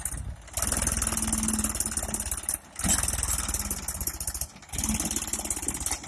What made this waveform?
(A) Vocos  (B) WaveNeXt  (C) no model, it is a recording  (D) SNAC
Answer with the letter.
C